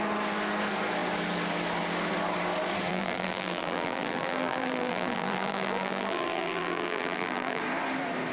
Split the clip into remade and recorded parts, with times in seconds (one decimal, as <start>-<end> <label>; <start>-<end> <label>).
0.0-2.9 recorded; 2.9-7.6 remade; 7.6-8.3 recorded